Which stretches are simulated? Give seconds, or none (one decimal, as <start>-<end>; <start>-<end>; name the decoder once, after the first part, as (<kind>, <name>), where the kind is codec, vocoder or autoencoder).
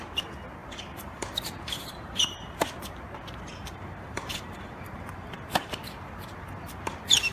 0.6-2.6 (vocoder, BigVGAN v2); 3.5-5.8